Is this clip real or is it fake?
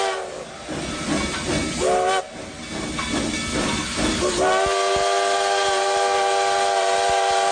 real